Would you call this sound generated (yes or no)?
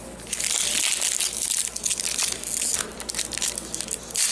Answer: no